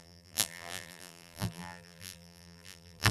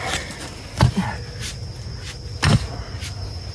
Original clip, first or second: second